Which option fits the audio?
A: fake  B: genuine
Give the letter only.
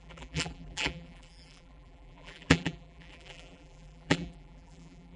A